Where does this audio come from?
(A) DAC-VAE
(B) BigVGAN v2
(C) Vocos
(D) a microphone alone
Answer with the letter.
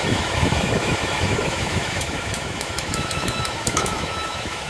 A